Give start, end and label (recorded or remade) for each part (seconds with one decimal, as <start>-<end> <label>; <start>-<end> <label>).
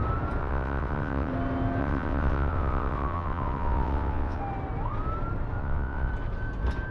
0.0-0.4 recorded; 0.4-1.3 remade; 1.3-1.8 recorded; 1.8-4.4 remade; 4.4-5.6 recorded; 5.6-6.1 remade; 6.1-6.9 recorded